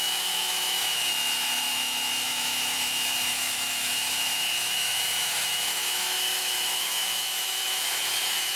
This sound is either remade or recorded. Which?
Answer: remade